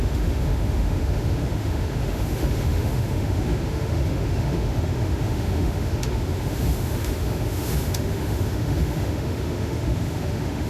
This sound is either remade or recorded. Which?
remade